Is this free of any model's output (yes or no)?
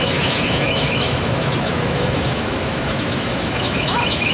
no